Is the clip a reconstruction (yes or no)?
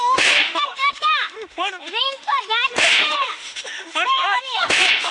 yes